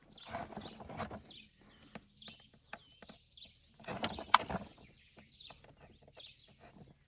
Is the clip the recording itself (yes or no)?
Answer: yes